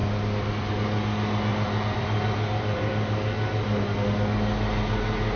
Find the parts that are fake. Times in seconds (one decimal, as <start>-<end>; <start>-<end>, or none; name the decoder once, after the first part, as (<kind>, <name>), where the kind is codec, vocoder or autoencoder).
0.0-0.7 (vocoder, BigVGAN v2); 1.5-2.9